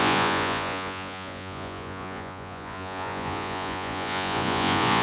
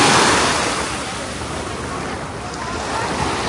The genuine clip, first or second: second